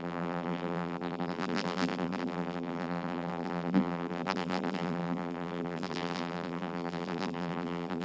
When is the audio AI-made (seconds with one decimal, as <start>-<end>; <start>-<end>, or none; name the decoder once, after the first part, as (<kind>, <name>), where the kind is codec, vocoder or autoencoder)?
0.0-8.0 (vocoder, BigVGAN v2)